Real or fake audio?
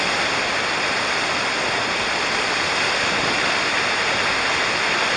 real